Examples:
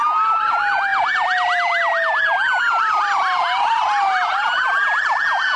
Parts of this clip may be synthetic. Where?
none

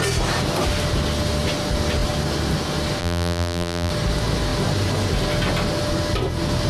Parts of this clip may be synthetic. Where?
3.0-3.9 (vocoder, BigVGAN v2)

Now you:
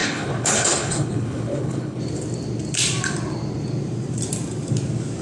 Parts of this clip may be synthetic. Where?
0.0-2.0 (codec, HILCodec)

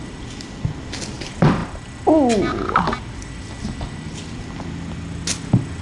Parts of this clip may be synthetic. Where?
none

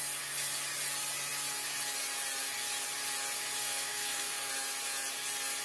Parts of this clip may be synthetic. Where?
3.6-4.5 (codec, SNAC)

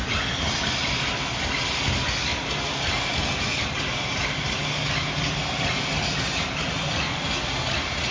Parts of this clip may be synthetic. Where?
none